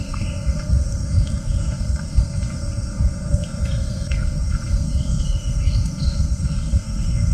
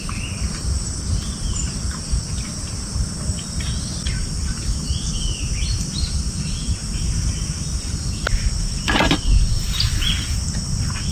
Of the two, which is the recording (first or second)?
second